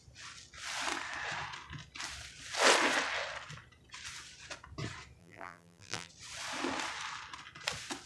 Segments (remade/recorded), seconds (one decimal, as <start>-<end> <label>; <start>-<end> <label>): 0.0-5.2 recorded; 5.2-6.1 remade; 6.1-8.1 recorded